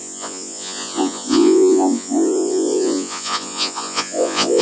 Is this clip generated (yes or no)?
yes